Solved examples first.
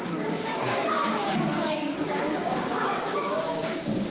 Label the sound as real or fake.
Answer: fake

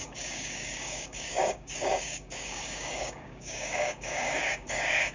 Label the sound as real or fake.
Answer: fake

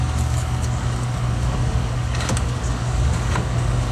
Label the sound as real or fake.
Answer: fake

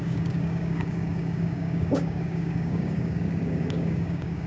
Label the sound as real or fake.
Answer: fake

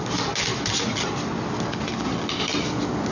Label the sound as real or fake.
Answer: real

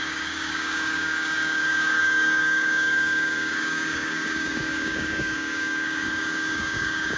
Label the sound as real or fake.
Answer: fake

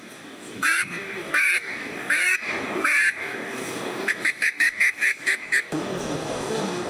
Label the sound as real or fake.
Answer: fake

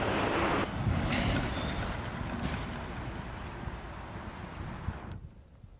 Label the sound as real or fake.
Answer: real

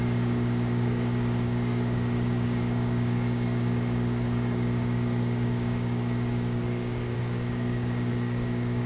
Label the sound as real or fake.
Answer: fake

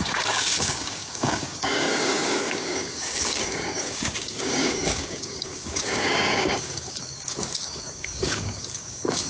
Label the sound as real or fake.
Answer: fake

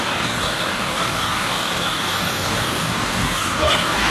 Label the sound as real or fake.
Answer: fake